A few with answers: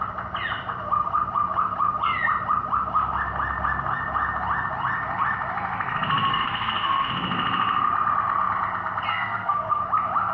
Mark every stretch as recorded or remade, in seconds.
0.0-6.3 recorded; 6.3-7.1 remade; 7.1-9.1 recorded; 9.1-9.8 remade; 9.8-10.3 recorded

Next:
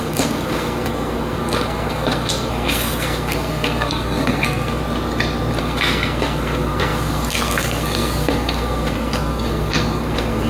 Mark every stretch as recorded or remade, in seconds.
0.0-4.8 remade; 4.8-5.6 recorded; 5.6-10.5 remade